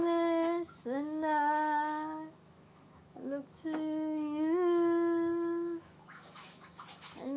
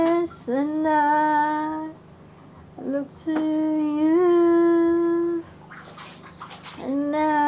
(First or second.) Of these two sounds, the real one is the second